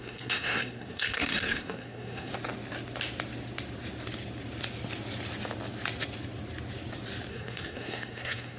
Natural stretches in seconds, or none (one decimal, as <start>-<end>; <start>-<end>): 2.3-7.3